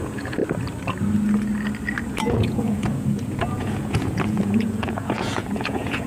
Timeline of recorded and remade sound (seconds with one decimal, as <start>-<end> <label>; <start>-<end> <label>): 0.0-0.4 remade; 0.4-2.1 recorded; 2.1-6.1 remade